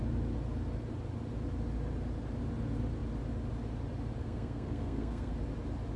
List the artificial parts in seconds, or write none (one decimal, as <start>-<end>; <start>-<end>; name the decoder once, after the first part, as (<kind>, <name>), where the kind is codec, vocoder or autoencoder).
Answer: 4.2-5.3 (codec, SNAC)